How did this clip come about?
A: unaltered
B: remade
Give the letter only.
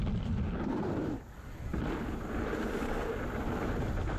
A